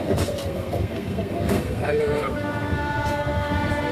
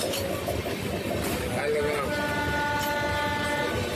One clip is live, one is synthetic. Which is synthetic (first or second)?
first